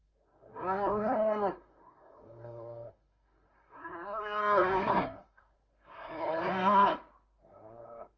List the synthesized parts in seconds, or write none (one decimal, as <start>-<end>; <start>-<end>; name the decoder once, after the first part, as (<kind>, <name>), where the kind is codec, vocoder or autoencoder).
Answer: 0.0-6.9 (codec, SNAC); 7.4-8.2